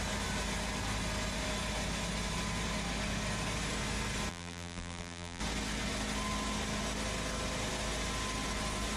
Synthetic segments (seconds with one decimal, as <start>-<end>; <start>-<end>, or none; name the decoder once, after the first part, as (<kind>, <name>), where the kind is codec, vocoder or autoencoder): 4.3-5.4 (vocoder, BigVGAN v2)